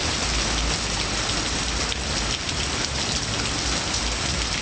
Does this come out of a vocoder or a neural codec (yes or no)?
no